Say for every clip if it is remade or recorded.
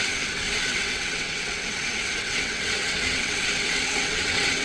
remade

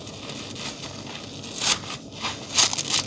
recorded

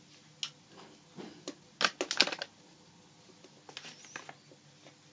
recorded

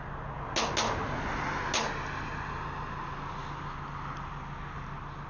recorded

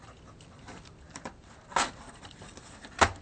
recorded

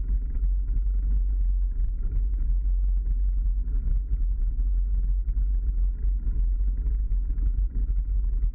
recorded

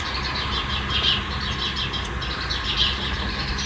recorded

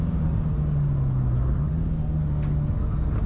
recorded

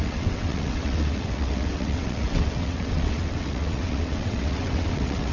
remade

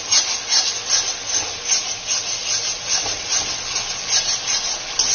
recorded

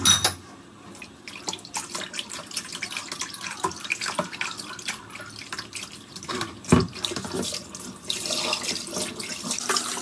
recorded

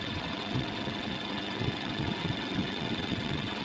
remade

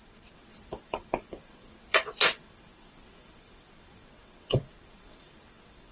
remade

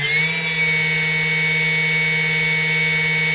recorded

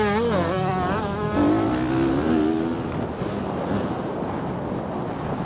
recorded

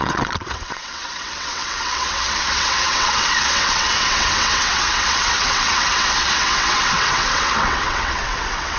remade